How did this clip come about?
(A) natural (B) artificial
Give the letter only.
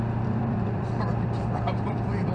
B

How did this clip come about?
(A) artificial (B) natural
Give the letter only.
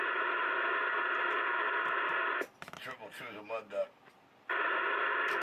B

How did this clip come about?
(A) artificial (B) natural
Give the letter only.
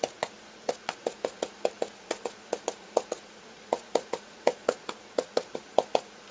A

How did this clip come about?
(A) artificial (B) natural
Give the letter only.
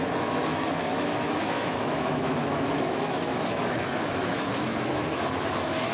A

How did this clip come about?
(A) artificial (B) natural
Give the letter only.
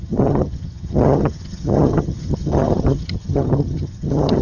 A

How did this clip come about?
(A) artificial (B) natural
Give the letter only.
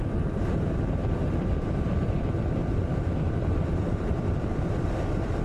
A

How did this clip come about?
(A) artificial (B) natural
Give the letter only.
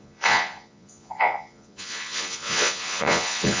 A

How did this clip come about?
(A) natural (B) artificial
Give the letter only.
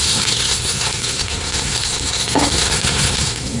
B